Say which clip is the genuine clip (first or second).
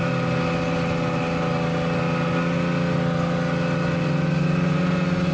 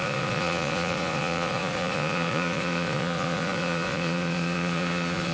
first